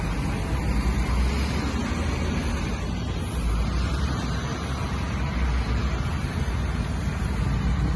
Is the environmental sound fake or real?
real